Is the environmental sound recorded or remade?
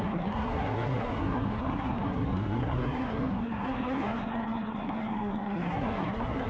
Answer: remade